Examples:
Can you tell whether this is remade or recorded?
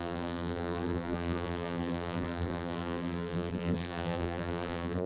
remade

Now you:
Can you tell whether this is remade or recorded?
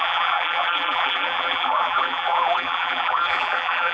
remade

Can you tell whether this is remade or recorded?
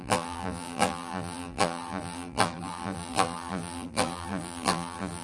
remade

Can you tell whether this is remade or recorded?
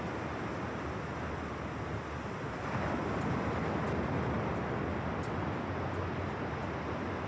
recorded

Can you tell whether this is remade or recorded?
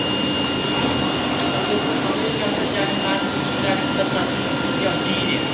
recorded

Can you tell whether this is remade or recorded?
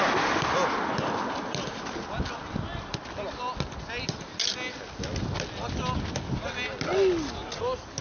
recorded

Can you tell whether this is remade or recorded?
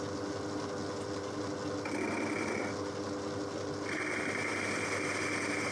recorded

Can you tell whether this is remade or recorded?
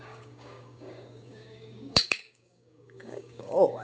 remade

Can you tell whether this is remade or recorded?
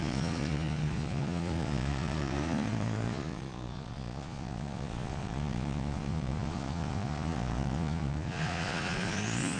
remade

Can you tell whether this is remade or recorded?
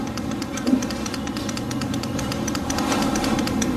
remade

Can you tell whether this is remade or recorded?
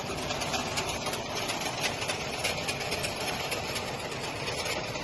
remade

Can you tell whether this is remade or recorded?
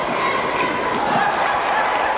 recorded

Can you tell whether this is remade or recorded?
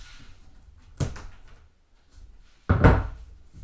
recorded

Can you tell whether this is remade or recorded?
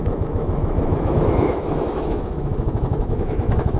remade